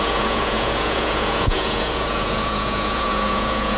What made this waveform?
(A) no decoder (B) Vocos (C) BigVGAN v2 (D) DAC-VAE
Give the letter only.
B